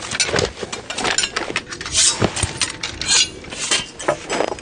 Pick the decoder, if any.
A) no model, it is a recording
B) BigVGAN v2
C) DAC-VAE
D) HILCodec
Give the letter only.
A